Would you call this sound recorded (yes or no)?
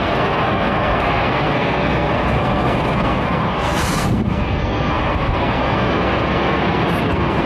no